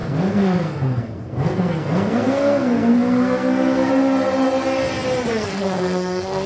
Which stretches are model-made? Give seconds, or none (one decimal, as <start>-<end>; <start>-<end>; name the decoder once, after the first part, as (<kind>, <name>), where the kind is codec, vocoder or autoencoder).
0.0-3.9 (codec, SNAC); 5.3-6.5